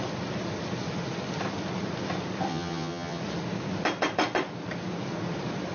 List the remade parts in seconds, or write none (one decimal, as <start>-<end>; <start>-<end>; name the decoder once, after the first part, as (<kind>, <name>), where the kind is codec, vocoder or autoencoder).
2.5-3.2 (vocoder, HiFi-GAN)